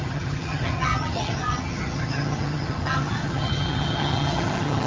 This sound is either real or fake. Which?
fake